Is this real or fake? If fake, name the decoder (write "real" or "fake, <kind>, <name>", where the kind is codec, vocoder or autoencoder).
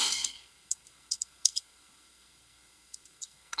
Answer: fake, codec, SNAC